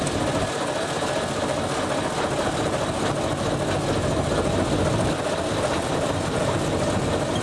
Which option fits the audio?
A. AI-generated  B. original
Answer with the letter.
B